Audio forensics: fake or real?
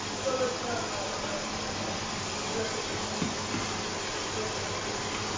real